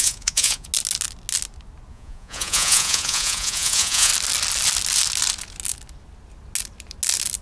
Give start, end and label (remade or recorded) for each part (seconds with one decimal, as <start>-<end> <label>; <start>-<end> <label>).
0.0-0.7 remade; 0.7-1.9 recorded; 1.9-4.1 remade; 4.1-7.4 recorded